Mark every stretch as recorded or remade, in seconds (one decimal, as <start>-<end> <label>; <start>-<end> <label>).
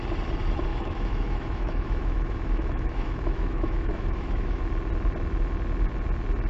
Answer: 0.0-0.7 recorded; 0.7-4.6 remade; 4.6-6.5 recorded